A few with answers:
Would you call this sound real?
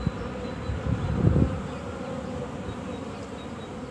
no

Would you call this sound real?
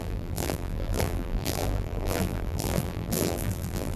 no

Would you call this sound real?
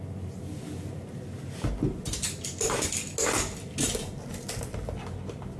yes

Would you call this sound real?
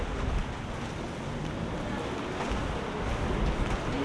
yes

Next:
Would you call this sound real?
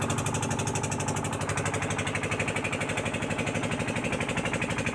yes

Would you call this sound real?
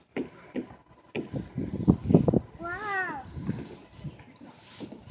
yes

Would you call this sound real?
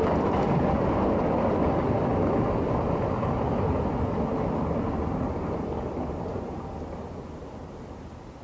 yes